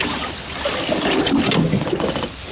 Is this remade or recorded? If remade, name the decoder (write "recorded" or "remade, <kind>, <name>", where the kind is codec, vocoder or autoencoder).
recorded